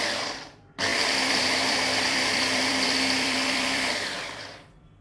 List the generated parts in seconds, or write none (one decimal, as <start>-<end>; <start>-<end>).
0.0-5.0